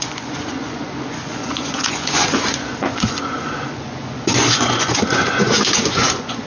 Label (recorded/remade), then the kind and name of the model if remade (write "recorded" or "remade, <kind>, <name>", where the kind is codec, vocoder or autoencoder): remade, vocoder, Vocos